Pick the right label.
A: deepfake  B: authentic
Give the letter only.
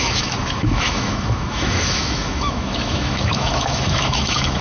A